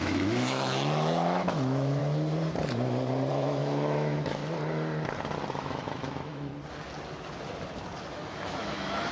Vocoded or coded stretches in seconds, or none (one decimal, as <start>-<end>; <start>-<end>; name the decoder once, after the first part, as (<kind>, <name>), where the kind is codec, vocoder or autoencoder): 0.0-2.0 (autoencoder, DAC-VAE); 3.3-4.4; 5.5-6.5; 8.1-9.1